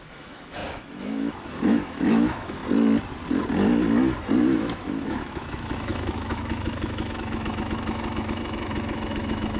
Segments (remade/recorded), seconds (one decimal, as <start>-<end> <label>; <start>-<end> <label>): 0.0-2.6 remade; 2.6-4.4 recorded; 4.4-9.6 remade